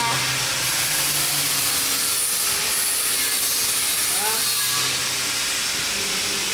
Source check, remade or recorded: recorded